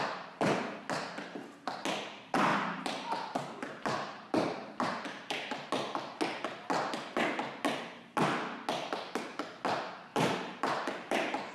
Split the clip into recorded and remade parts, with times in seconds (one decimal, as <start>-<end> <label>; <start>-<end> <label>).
0.0-2.5 recorded; 2.5-5.7 remade; 5.7-10.1 recorded; 10.1-11.5 remade